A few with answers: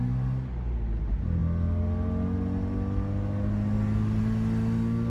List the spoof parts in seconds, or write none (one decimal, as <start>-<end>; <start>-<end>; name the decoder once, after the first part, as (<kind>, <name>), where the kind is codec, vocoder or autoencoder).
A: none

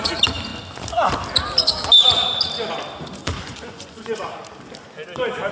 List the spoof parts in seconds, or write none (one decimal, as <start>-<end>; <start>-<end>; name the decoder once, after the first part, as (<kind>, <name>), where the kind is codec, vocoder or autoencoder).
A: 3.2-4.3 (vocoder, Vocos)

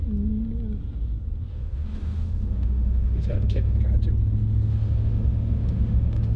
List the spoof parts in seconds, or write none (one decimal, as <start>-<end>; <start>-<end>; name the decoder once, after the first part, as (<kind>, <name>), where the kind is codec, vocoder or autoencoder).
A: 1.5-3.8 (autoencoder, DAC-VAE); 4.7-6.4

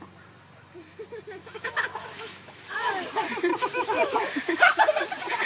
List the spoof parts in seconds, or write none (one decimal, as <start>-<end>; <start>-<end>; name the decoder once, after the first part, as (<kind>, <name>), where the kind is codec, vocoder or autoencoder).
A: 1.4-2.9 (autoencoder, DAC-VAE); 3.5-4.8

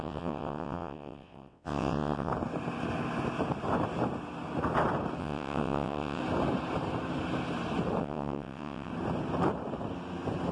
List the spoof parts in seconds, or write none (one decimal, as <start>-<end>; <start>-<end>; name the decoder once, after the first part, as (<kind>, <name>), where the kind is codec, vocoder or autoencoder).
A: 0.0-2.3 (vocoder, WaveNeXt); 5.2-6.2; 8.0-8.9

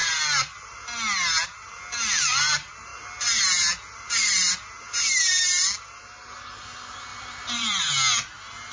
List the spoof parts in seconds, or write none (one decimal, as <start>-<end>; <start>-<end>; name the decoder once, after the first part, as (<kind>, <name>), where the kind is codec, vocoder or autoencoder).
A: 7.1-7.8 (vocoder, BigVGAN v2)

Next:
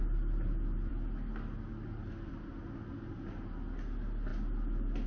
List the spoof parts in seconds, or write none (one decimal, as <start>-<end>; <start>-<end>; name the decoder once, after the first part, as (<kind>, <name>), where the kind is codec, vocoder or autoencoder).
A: none

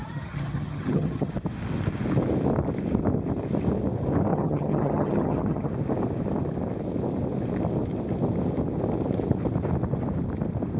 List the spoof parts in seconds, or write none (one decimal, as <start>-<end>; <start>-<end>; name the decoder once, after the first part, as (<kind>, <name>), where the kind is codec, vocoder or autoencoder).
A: 0.0-1.3 (vocoder, HiFi-GAN); 4.3-5.7